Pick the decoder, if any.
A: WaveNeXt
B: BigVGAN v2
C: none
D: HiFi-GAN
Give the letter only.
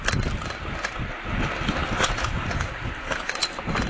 C